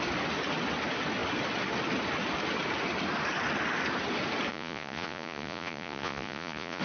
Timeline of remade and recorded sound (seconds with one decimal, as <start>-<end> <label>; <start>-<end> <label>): 0.0-4.5 recorded; 4.5-6.8 remade